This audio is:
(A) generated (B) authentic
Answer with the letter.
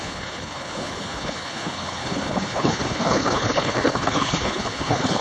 A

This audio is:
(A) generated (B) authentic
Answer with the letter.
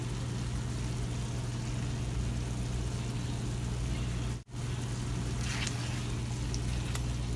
B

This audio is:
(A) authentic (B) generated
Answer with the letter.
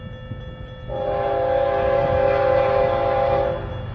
A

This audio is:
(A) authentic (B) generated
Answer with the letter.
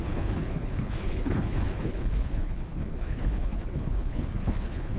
B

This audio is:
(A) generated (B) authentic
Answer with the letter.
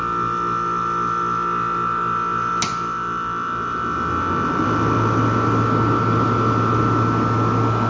B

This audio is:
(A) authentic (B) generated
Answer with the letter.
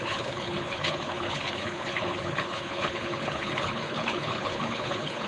B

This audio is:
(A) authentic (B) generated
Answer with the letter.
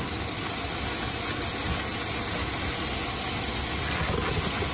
A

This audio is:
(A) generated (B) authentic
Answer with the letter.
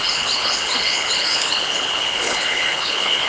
A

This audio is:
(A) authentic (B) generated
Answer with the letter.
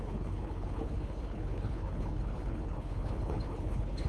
B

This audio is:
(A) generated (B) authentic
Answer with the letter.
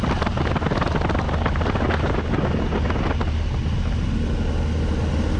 B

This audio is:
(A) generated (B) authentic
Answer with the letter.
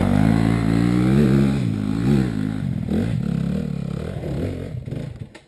B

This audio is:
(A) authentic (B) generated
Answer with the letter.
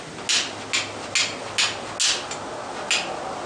A